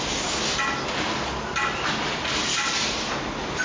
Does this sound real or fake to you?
real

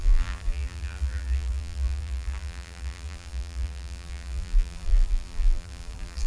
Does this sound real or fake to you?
fake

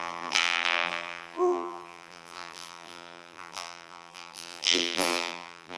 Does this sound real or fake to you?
fake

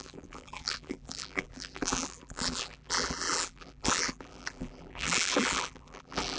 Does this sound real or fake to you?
fake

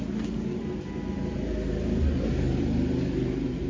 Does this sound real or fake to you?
real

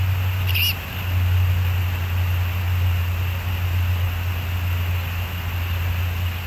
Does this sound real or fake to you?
real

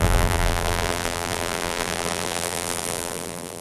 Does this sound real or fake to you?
fake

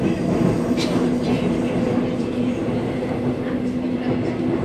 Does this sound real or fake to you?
real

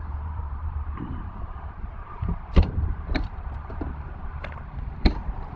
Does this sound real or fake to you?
fake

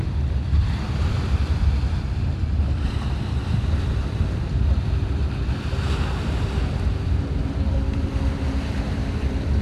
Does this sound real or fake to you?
fake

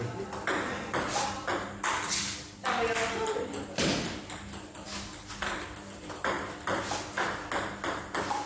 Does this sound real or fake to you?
real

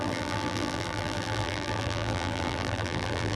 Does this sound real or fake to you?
fake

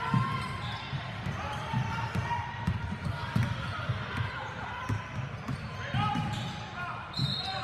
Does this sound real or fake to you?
fake